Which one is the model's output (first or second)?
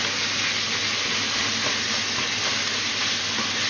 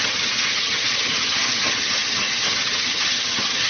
second